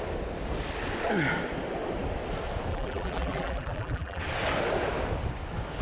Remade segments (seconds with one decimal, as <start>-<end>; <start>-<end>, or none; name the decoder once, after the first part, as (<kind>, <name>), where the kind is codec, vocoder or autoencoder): 2.7-4.2 (vocoder, BigVGAN v2)